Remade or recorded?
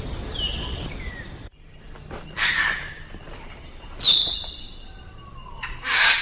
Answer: recorded